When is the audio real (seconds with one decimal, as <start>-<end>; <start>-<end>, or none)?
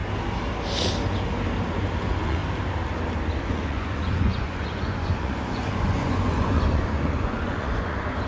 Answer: 0.0-2.0; 2.4-3.4